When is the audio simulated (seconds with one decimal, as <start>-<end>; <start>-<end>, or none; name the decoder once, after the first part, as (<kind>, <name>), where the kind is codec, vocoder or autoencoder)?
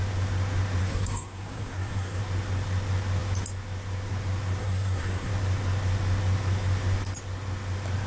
0.8-2.2 (codec, SNAC); 4.6-5.3